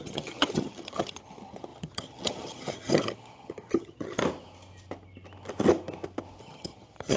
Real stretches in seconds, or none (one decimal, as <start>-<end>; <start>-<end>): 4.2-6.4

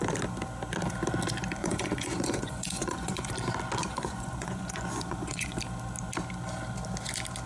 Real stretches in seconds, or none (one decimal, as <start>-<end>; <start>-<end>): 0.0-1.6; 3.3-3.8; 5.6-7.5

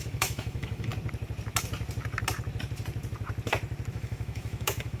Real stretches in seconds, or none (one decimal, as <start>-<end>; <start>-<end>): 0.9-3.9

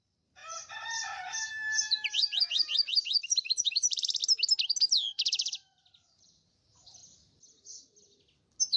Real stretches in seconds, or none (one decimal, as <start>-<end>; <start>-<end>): 4.2-5.1; 7.0-8.8